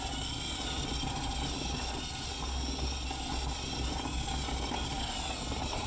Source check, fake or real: real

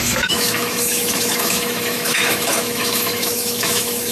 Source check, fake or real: fake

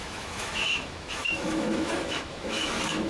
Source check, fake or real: fake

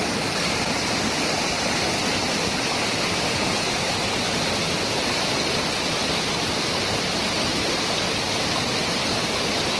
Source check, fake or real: real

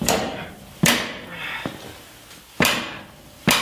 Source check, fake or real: real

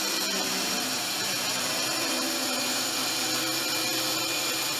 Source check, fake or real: fake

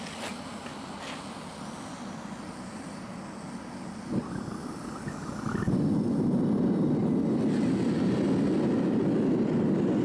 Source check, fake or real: real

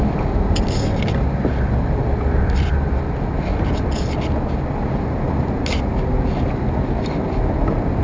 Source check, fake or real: real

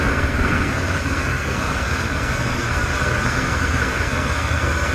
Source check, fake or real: fake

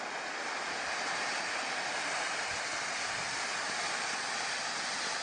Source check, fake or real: real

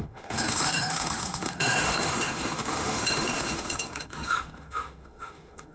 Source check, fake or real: fake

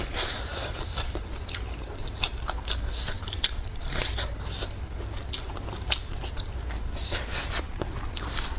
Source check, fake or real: real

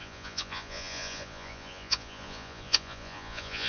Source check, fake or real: fake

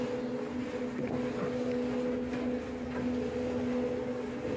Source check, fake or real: real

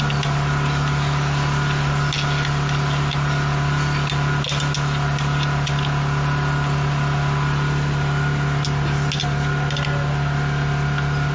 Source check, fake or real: real